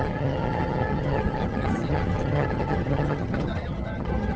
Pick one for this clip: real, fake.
fake